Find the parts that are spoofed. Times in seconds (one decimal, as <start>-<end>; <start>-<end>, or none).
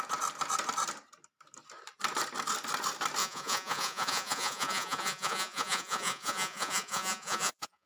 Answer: 3.2-7.9